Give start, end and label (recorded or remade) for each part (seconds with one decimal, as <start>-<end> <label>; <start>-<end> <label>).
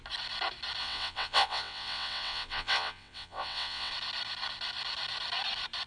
0.0-0.8 recorded; 0.8-3.9 remade; 3.9-5.9 recorded